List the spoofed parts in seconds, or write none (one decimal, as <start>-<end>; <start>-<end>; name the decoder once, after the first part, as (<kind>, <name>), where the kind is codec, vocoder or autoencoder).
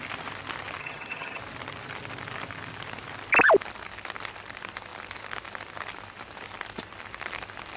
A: 0.8-1.4 (vocoder, HiFi-GAN)